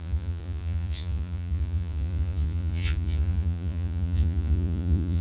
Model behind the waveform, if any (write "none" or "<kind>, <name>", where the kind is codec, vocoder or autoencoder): vocoder, Vocos